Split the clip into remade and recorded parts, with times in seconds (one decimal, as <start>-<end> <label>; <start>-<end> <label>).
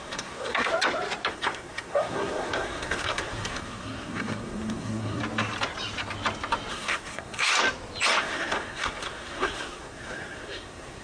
0.0-0.7 remade; 0.7-1.3 recorded; 1.3-5.2 remade; 5.2-6.7 recorded; 6.7-7.5 remade; 7.5-8.2 recorded; 8.2-11.0 remade